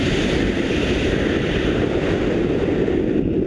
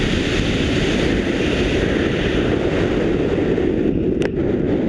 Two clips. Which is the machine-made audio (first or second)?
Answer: first